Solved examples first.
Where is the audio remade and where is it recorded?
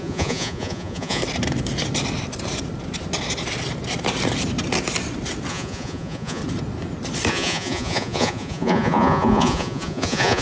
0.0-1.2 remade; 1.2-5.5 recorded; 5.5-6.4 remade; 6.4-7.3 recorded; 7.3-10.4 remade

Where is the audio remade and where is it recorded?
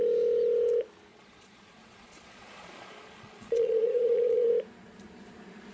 0.0-1.1 recorded; 1.1-4.5 remade; 4.5-5.7 recorded